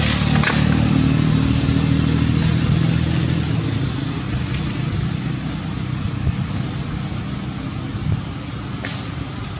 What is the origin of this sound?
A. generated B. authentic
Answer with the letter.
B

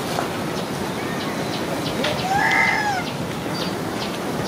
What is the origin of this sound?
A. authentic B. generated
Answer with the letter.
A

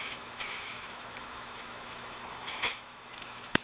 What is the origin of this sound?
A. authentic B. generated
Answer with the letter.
B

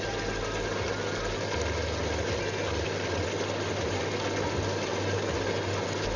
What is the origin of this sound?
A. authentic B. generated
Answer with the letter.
A